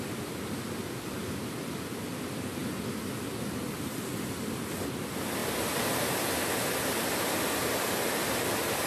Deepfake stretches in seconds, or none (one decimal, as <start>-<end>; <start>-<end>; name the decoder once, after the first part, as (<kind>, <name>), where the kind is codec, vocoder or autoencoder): none